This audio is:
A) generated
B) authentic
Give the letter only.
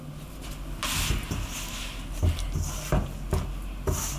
B